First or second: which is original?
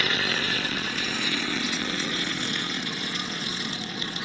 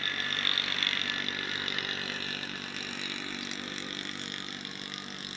second